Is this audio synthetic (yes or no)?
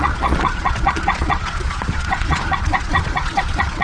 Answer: yes